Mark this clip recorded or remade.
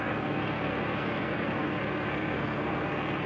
remade